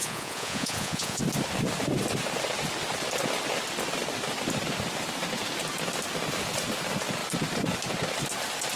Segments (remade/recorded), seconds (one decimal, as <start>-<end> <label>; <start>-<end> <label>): 0.0-1.2 remade; 1.2-8.8 recorded